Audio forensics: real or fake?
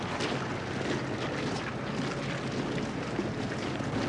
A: real